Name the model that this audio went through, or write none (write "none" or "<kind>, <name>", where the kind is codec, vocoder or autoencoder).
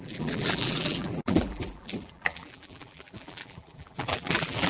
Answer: vocoder, BigVGAN v2